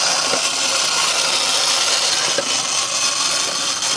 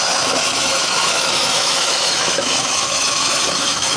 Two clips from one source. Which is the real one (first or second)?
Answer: first